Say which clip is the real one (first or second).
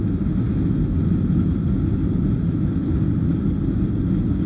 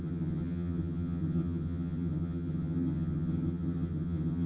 first